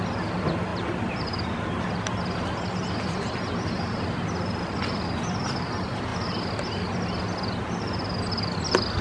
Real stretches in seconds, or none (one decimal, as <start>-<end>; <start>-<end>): 0.0-0.7; 3.4-9.0